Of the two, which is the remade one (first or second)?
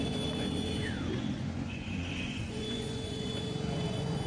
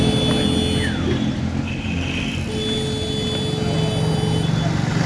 first